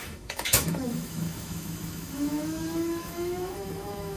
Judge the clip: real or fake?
fake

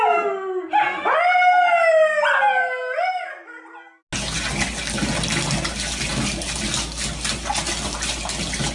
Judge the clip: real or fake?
real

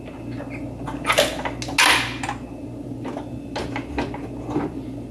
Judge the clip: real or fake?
real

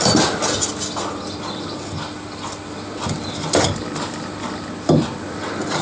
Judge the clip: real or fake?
real